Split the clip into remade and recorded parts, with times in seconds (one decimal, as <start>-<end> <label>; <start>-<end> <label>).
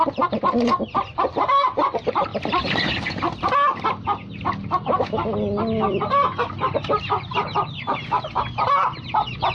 0.0-9.5 recorded